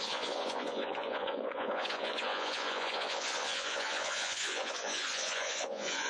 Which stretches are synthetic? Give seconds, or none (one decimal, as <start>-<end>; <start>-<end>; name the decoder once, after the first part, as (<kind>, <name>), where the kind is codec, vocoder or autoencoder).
0.0-6.1 (vocoder, Vocos)